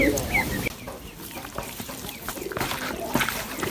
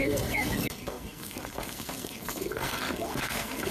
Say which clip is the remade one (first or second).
second